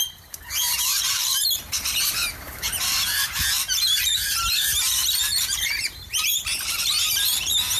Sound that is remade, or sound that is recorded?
remade